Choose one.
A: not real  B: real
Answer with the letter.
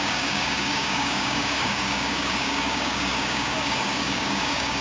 A